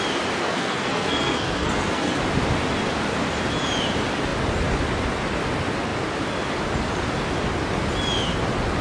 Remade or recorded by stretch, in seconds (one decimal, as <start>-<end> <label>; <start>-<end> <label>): 0.0-0.4 recorded; 0.4-2.2 remade; 2.2-8.8 recorded

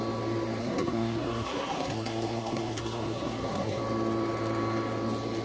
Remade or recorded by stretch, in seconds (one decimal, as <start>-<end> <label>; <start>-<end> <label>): 0.0-0.6 recorded; 0.6-3.8 remade; 3.8-5.4 recorded

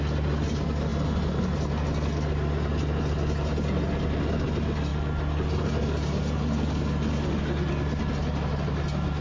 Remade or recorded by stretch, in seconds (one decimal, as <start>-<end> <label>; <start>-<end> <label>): 0.0-9.2 recorded

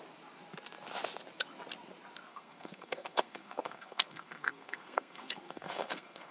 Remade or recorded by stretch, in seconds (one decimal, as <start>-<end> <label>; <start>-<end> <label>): 0.0-2.3 recorded; 2.3-6.3 remade

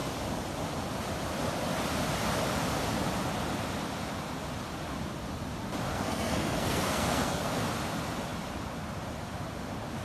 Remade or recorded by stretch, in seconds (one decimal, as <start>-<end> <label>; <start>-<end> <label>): 0.0-5.9 recorded; 5.9-7.6 remade; 7.6-10.0 recorded

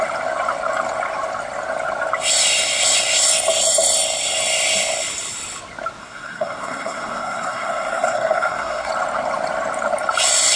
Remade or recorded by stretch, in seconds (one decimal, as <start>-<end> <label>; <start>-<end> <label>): 0.0-6.0 recorded; 6.0-8.9 remade; 8.9-10.6 recorded

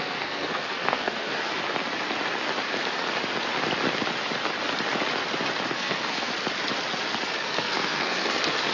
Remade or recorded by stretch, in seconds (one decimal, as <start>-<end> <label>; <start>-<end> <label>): 0.0-1.6 remade; 1.6-5.7 recorded; 5.7-6.3 remade; 6.3-7.4 recorded; 7.4-8.7 remade

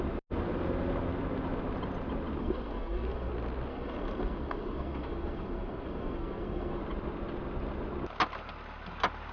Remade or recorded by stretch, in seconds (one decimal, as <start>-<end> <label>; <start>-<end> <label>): 0.0-2.4 recorded; 2.4-3.3 remade; 3.3-3.7 recorded; 3.7-6.8 remade; 6.8-9.3 recorded